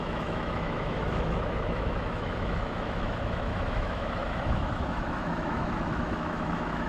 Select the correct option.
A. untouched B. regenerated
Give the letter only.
B